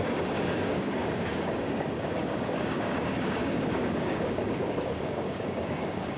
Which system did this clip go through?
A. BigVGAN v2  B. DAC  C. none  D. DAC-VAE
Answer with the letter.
B